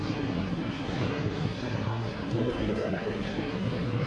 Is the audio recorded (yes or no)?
no